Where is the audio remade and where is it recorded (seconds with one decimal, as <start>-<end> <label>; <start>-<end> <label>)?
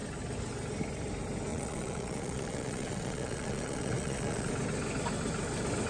0.0-1.5 recorded; 1.5-4.5 remade; 4.5-5.9 recorded